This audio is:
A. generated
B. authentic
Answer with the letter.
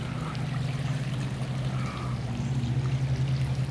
B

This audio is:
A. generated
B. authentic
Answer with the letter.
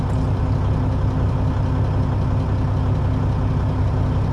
B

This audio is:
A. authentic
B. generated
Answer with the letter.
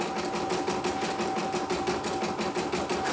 A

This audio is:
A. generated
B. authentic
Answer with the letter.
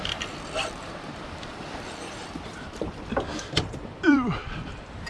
A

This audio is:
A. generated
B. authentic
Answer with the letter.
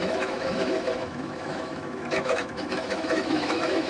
A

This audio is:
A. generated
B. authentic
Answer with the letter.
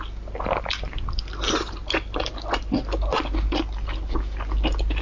B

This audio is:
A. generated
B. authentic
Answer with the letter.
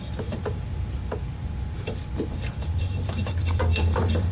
A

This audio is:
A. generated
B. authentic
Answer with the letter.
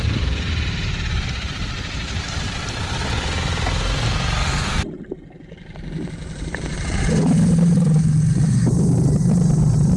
A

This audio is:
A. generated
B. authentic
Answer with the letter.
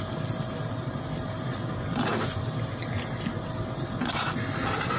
B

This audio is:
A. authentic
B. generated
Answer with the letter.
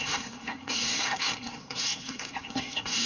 B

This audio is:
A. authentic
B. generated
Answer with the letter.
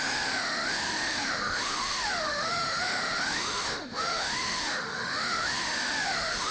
B